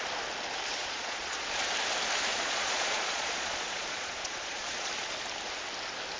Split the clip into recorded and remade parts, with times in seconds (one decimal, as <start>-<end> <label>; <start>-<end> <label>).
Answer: 0.0-0.8 recorded; 0.8-1.7 remade; 1.7-2.3 recorded; 2.3-4.9 remade; 4.9-6.2 recorded

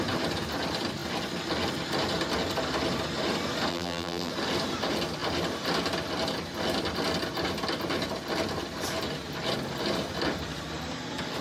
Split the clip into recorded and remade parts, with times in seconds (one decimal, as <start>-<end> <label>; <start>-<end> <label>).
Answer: 0.0-3.7 recorded; 3.7-4.3 remade; 4.3-11.4 recorded

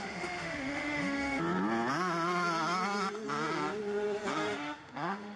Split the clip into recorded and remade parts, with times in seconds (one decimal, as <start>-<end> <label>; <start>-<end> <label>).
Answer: 0.0-1.4 remade; 1.4-4.3 recorded; 4.3-5.4 remade

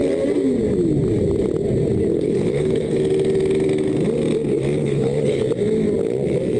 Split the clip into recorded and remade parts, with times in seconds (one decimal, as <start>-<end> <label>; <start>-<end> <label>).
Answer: 0.0-2.1 recorded; 2.1-3.0 remade; 3.0-4.8 recorded; 4.8-5.4 remade; 5.4-6.6 recorded

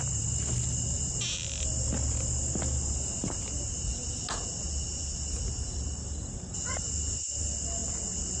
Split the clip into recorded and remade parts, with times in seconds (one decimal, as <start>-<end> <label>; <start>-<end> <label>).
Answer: 0.0-8.4 recorded

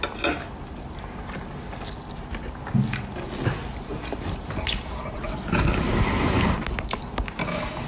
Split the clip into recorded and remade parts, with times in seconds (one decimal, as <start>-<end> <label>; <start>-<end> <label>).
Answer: 0.0-3.9 recorded; 3.9-4.4 remade; 4.4-7.9 recorded

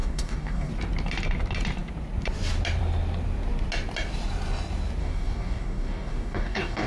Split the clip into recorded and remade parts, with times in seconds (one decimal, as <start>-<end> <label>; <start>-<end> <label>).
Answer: 0.0-0.7 remade; 0.7-5.0 recorded; 5.0-6.9 remade

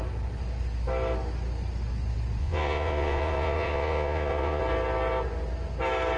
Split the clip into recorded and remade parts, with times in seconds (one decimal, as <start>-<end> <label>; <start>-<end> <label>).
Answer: 0.0-2.4 recorded; 2.4-4.6 remade; 4.6-6.2 recorded